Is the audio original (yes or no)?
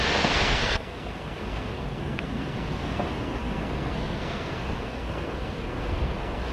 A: no